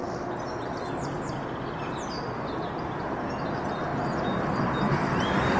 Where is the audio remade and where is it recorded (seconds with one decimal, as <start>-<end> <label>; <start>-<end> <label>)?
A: 0.0-5.6 recorded